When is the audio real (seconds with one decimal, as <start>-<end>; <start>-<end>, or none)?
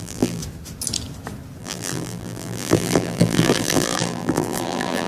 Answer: 0.4-1.6